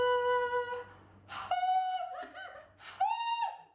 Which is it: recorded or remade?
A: recorded